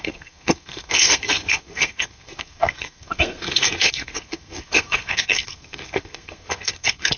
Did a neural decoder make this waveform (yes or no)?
yes